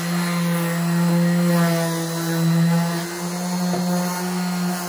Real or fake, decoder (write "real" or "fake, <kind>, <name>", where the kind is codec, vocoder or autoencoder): real